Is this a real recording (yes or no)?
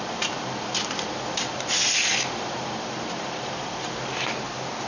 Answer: yes